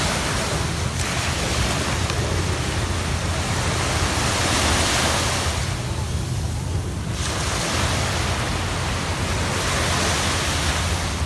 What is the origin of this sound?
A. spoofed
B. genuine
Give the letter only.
B